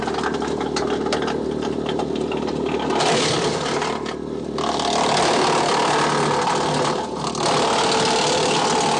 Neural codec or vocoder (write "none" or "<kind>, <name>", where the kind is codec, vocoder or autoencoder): none